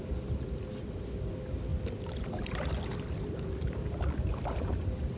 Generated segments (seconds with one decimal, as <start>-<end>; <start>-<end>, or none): none